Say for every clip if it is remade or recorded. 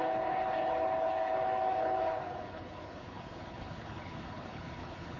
remade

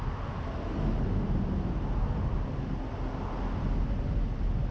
recorded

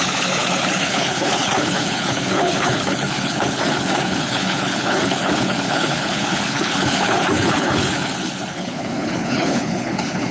remade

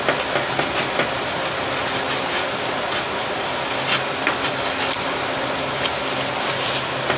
recorded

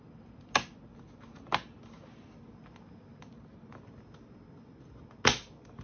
recorded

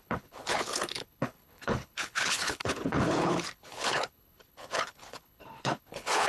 remade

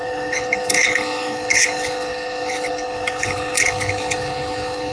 remade